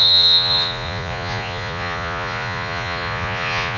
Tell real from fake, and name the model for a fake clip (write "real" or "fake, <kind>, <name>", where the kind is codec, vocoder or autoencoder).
fake, vocoder, Vocos